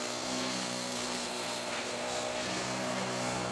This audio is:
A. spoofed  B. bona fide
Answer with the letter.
A